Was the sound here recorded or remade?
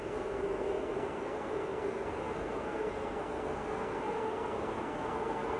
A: remade